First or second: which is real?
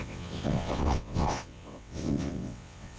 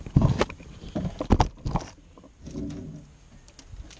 second